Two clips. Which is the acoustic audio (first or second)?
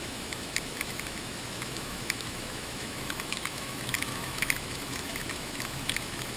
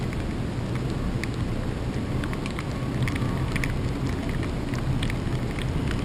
second